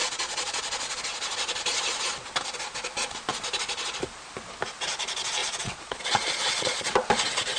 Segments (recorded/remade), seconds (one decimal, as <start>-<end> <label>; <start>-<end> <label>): 0.0-1.0 remade; 1.0-5.4 recorded; 5.4-6.9 remade; 6.9-7.6 recorded